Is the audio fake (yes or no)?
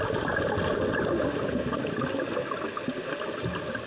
no